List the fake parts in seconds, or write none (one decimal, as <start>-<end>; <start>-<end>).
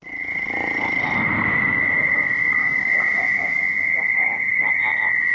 2.6-3.6; 4.1-4.7